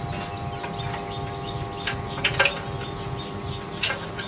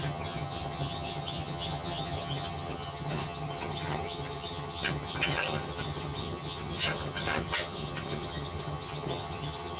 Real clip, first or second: first